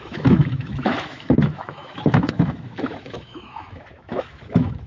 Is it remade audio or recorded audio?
remade